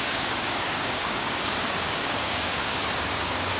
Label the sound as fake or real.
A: fake